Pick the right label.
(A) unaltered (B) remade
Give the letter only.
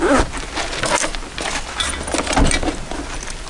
A